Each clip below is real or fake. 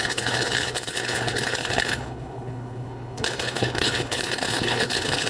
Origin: fake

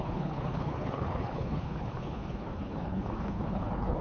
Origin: fake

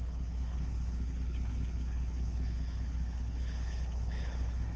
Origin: fake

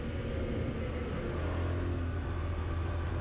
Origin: real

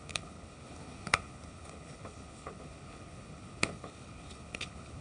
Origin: fake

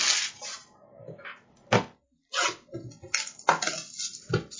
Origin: real